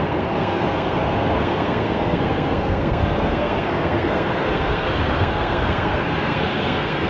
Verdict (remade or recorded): remade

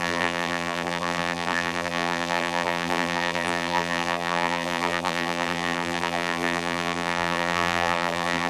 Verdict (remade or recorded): remade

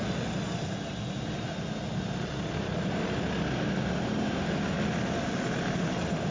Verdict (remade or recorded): recorded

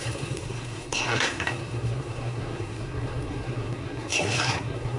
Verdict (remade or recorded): remade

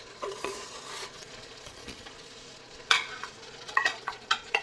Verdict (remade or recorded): remade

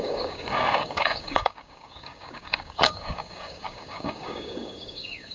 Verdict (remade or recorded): remade